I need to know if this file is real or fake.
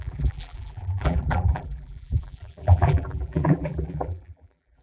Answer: fake